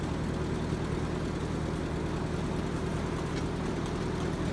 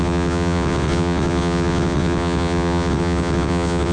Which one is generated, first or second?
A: second